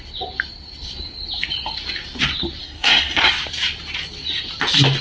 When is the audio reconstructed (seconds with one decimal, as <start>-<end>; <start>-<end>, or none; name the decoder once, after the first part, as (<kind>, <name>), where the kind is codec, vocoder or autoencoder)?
2.6-3.3 (codec, SNAC)